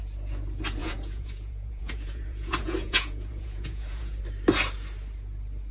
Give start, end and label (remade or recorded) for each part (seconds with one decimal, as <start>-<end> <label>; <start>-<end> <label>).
0.0-0.8 recorded; 0.8-4.2 remade; 4.2-5.7 recorded